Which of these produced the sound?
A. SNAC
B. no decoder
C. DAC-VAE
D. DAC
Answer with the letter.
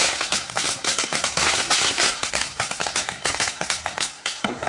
A